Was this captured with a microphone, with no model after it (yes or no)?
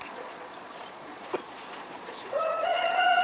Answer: no